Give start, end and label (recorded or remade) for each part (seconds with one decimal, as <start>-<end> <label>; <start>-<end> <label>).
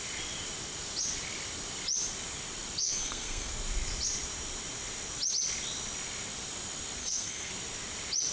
0.0-2.8 recorded; 2.8-3.5 remade; 3.5-7.0 recorded; 7.0-7.5 remade; 7.5-8.3 recorded